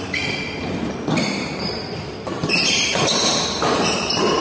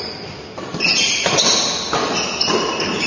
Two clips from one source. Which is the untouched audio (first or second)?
second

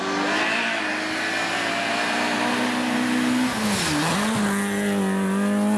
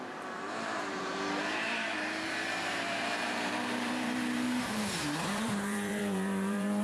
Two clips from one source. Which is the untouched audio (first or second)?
first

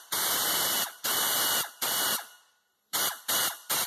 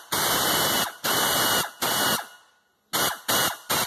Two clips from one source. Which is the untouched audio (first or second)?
second